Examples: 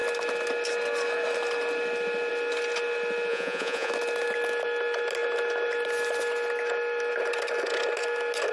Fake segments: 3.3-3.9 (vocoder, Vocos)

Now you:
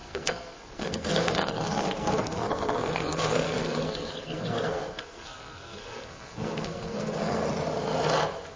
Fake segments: 0.0-7.4 (codec, SNAC)

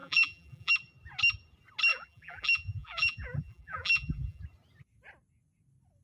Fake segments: 0.0-0.7 (vocoder, BigVGAN v2); 1.9-4.4